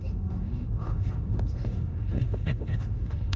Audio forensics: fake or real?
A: fake